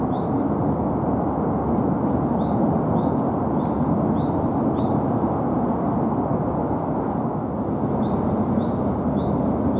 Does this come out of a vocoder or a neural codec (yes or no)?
no